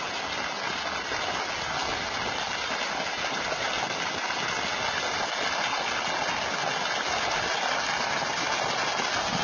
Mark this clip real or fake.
real